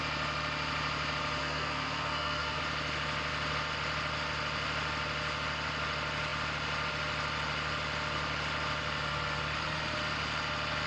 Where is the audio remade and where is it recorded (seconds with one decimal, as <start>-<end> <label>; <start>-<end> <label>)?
0.0-1.4 recorded; 1.4-2.6 remade; 2.6-10.9 recorded